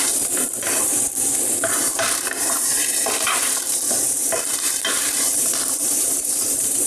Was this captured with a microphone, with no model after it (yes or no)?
no